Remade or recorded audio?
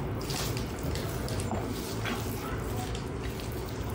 recorded